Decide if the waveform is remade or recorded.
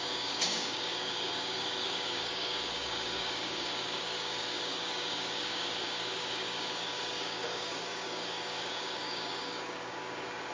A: remade